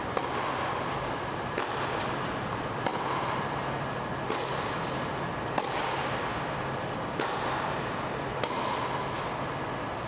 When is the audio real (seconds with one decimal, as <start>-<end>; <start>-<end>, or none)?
0.0-10.1